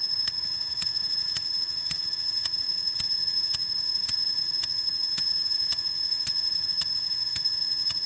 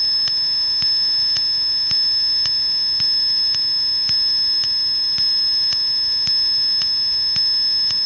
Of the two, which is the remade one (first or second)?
first